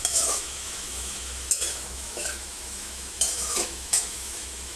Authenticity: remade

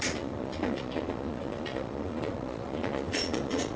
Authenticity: remade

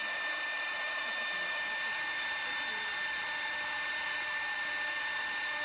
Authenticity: remade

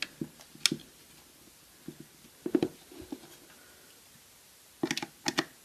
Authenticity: recorded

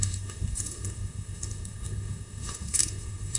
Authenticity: remade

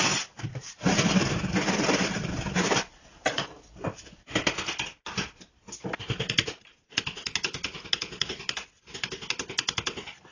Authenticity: recorded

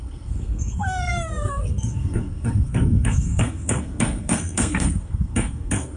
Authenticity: remade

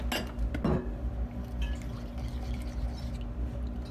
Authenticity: recorded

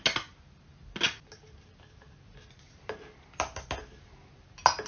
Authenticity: recorded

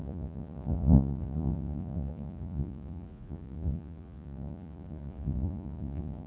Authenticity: remade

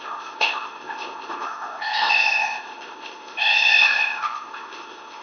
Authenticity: remade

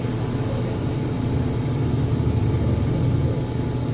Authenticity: recorded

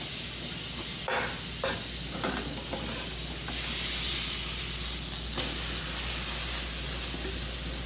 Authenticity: recorded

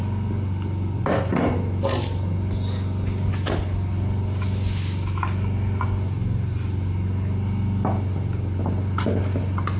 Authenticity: recorded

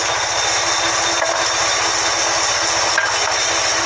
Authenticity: recorded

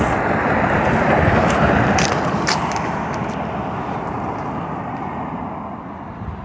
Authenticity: recorded